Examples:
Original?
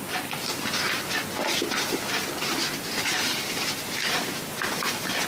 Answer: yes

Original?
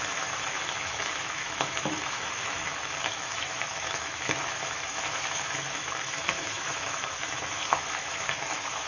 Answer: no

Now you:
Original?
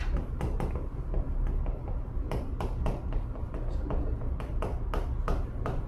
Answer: yes